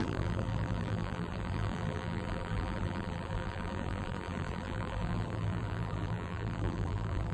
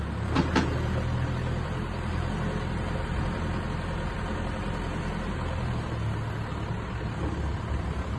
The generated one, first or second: first